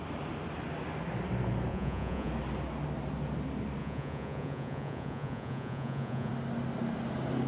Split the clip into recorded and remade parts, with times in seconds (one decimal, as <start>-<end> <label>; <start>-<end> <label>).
0.0-1.7 recorded; 1.7-2.3 remade; 2.3-3.8 recorded; 3.8-6.3 remade; 6.3-7.5 recorded